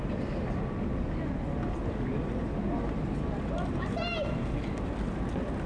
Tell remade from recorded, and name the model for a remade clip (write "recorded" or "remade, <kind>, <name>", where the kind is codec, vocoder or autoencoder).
recorded